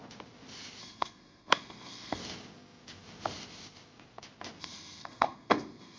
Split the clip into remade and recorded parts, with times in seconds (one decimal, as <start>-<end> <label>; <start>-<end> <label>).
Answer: 0.0-0.8 recorded; 0.8-2.2 remade; 2.2-4.6 recorded; 4.6-6.0 remade